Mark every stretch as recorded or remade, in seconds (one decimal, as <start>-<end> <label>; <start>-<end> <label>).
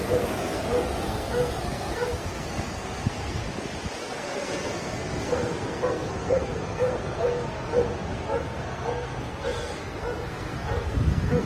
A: 0.0-3.4 remade; 3.4-4.0 recorded; 4.0-11.5 remade